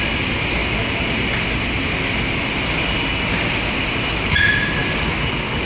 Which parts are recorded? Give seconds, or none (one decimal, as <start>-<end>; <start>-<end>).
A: 4.8-5.7